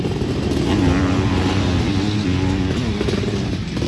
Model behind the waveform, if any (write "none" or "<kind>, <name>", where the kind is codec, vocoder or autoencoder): none